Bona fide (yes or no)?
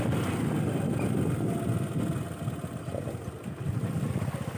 yes